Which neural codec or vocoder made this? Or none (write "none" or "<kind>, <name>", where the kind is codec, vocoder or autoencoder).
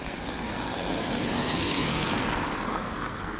codec, SNAC